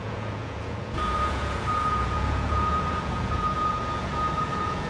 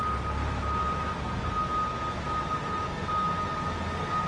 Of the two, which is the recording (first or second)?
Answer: second